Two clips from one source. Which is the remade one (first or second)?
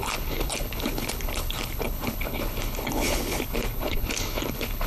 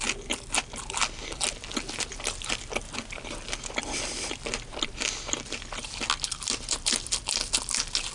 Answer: first